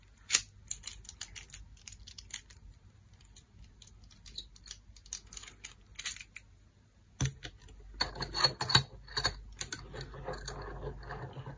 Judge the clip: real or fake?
real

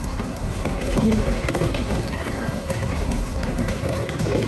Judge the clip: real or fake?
fake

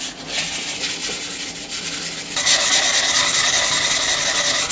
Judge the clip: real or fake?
real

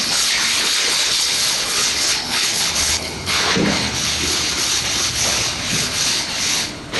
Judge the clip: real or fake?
fake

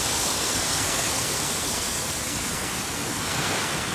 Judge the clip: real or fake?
fake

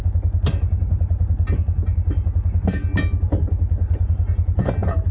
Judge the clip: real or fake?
real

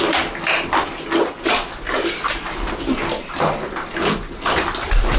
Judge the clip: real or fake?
real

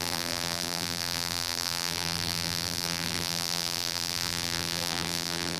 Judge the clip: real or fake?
fake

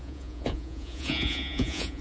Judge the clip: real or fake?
fake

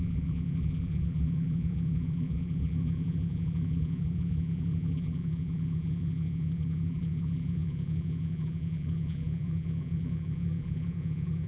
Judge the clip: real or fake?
fake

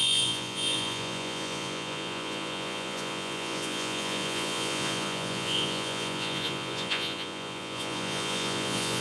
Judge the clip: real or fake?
fake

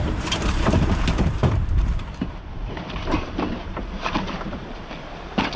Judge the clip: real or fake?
fake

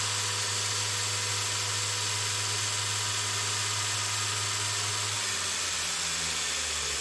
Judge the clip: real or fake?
real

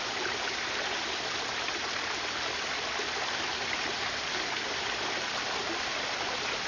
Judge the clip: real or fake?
fake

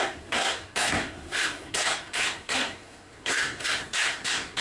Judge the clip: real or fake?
fake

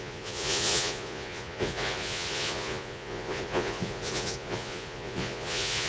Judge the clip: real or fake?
fake